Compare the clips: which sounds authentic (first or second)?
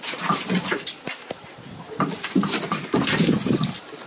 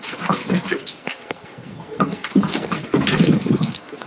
first